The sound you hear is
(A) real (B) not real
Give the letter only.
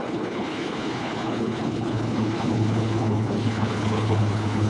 B